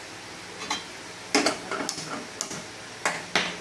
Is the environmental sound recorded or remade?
recorded